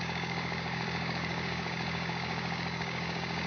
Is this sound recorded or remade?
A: remade